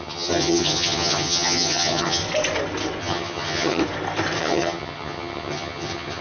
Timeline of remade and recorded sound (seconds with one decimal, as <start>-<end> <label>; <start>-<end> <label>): 0.0-2.2 remade; 2.2-3.0 recorded; 3.0-3.8 remade; 3.8-4.4 recorded; 4.4-6.2 remade